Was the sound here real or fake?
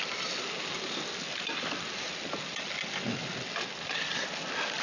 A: real